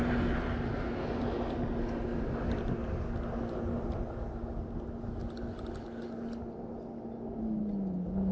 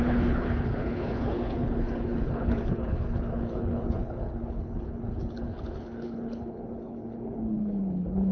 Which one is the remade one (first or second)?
second